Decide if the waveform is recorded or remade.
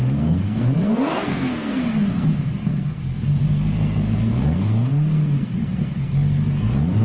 remade